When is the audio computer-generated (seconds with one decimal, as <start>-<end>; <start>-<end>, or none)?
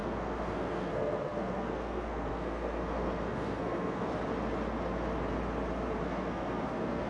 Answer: 0.0-4.1; 6.0-7.1